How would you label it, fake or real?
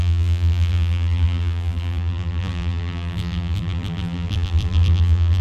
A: fake